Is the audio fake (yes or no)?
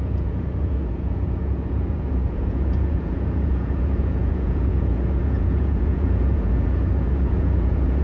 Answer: yes